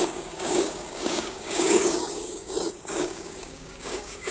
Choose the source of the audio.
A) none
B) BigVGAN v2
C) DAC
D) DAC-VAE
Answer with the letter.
C